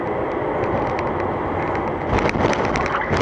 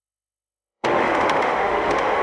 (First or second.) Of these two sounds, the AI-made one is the second